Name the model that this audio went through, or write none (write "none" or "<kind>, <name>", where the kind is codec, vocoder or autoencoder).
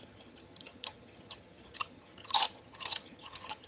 vocoder, HiFi-GAN